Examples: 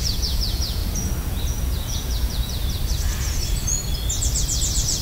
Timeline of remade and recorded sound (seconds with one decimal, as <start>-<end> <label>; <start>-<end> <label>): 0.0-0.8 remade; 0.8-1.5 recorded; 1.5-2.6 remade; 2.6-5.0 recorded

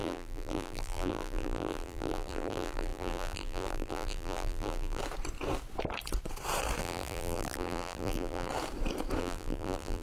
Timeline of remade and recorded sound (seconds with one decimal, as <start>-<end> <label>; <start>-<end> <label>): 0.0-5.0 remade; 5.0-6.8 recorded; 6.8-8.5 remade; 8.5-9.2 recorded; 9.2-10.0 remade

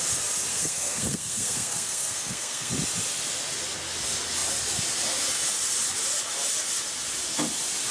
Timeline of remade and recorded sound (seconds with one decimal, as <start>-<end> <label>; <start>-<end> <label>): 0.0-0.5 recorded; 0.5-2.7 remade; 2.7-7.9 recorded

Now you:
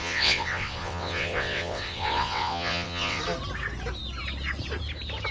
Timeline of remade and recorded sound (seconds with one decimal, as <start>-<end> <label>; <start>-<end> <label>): 0.0-3.2 remade; 3.2-5.3 recorded